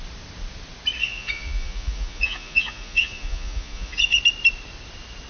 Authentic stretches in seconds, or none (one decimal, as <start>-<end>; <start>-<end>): 0.0-1.0; 4.2-5.3